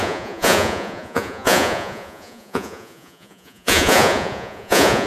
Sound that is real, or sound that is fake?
fake